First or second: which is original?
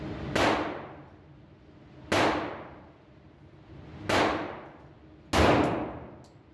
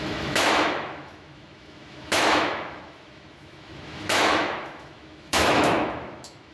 first